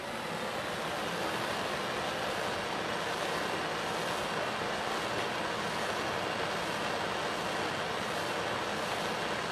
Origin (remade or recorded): recorded